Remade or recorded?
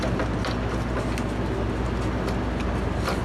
recorded